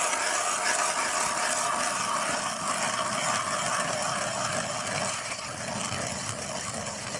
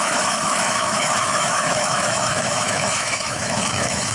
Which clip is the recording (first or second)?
first